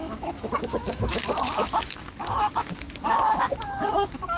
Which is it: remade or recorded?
remade